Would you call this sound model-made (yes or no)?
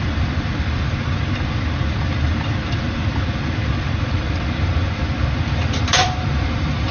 yes